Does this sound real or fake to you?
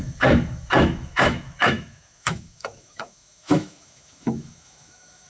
fake